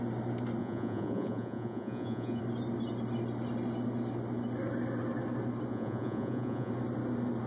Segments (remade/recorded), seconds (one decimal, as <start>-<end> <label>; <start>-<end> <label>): 0.0-0.6 recorded; 0.6-2.4 remade; 2.4-5.7 recorded; 5.7-6.7 remade; 6.7-7.5 recorded